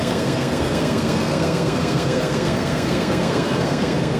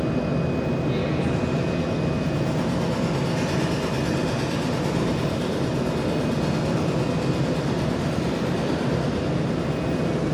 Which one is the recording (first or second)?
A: second